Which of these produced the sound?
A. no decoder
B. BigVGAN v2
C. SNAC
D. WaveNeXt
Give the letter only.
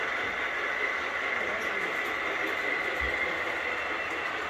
A